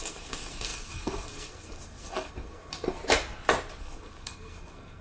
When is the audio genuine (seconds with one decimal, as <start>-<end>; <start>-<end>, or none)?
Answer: 3.0-3.8

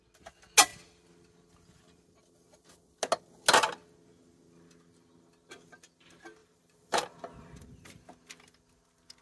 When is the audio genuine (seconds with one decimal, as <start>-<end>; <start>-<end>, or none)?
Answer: 0.0-6.4; 8.0-9.2

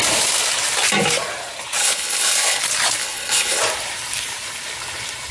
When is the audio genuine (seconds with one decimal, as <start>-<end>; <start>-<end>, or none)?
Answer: 0.0-1.8; 2.6-3.0; 3.6-5.3